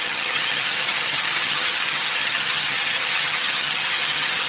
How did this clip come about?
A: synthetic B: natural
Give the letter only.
A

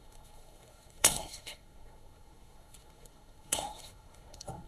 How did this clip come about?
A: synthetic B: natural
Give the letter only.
A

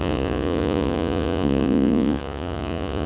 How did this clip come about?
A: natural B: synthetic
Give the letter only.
B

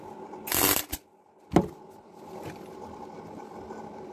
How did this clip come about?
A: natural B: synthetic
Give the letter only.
A